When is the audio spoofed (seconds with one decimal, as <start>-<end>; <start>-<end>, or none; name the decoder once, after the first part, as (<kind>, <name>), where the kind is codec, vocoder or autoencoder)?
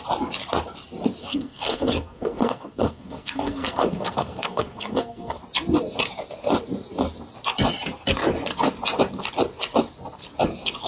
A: 1.2-5.4 (codec, SNAC)